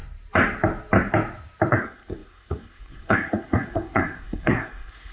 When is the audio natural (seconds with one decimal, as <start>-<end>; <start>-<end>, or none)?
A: 0.0-1.7